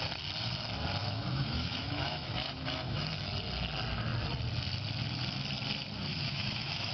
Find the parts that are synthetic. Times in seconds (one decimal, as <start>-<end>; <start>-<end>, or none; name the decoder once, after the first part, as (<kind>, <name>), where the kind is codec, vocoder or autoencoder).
1.0-3.3 (autoencoder, DAC-VAE); 6.1-6.9